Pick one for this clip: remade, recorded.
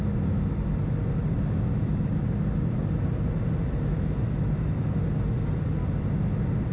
recorded